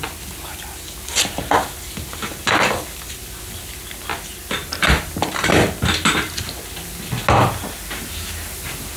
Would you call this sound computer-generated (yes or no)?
no